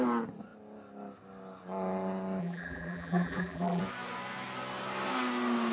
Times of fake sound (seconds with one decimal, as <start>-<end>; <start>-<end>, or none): 2.4-3.8